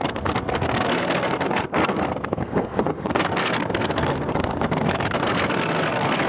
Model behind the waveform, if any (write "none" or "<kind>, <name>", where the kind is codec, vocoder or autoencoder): codec, SNAC